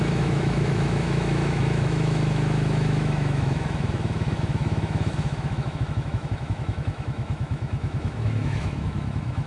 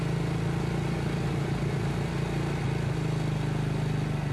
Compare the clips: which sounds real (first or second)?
second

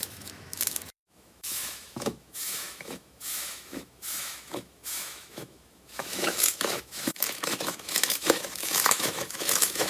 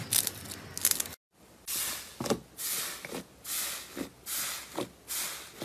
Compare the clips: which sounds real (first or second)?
second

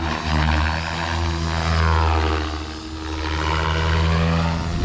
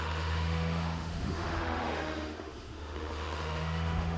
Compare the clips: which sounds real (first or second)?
first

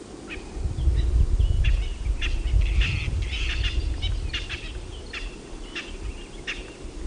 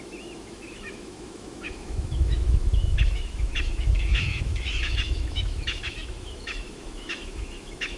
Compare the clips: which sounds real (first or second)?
first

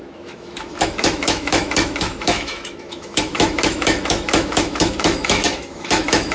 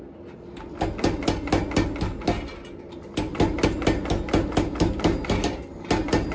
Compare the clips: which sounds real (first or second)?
second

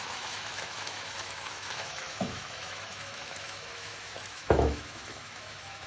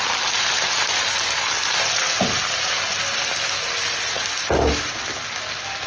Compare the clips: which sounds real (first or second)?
second